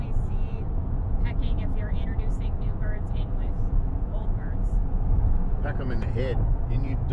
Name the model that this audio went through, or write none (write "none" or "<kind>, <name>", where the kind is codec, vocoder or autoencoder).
vocoder, Vocos